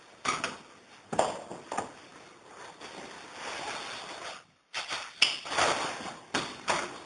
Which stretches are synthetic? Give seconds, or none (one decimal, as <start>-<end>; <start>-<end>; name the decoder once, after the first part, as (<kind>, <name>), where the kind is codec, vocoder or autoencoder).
none